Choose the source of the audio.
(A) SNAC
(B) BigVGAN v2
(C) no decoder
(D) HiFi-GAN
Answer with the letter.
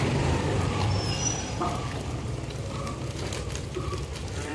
B